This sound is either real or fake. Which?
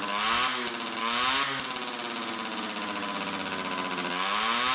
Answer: real